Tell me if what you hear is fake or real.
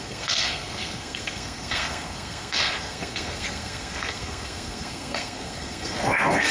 fake